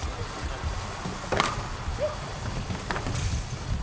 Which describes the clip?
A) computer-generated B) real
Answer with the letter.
B